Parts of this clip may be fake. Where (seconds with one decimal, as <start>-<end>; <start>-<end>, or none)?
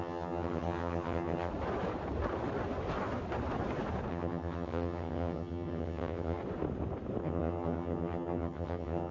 0.0-1.5; 4.1-6.4; 7.2-9.1